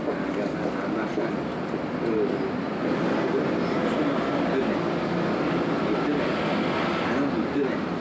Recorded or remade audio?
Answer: recorded